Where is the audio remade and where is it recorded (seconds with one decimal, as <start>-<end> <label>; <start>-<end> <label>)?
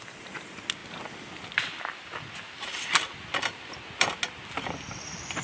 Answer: 0.0-5.4 recorded